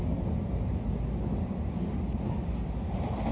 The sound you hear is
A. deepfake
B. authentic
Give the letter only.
B